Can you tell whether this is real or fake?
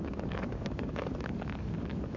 fake